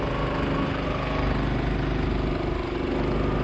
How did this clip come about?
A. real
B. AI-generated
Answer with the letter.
A